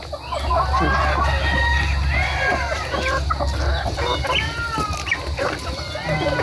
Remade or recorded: recorded